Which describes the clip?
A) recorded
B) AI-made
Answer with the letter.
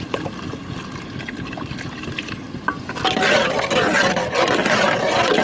A